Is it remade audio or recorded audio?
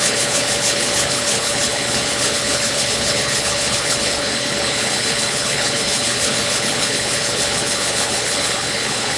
remade